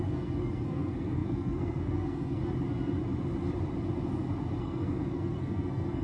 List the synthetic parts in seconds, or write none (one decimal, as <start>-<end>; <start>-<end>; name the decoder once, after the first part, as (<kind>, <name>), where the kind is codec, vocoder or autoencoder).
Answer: 0.0-2.4 (codec, SNAC); 4.6-6.0